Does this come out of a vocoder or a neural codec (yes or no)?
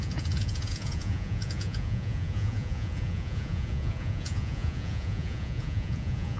yes